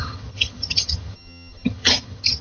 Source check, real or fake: fake